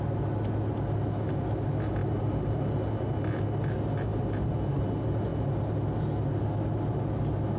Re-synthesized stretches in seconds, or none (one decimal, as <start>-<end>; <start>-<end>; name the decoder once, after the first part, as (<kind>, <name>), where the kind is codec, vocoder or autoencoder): 2.0-2.6 (vocoder, BigVGAN v2); 4.1-4.8